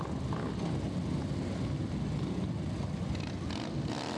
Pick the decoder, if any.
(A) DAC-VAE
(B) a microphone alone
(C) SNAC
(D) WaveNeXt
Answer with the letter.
B